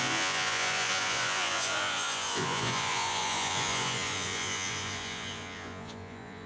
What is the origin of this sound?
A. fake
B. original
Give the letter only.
A